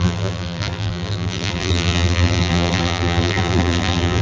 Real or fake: fake